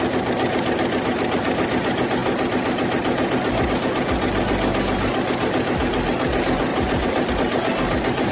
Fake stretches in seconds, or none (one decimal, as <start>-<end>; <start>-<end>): 6.7-7.3